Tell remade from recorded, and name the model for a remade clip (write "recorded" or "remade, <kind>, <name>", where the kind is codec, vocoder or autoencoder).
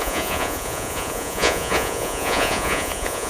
remade, vocoder, Vocos